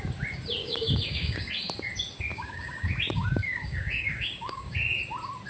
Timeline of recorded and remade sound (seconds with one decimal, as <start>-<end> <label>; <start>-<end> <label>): 0.0-0.6 recorded; 0.6-1.5 remade; 1.5-2.3 recorded; 2.3-5.0 remade; 5.0-5.5 recorded